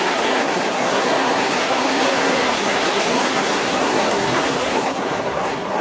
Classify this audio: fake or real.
fake